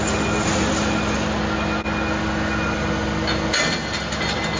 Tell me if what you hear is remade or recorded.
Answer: recorded